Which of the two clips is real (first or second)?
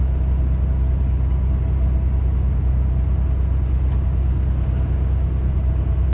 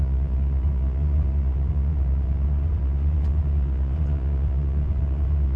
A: first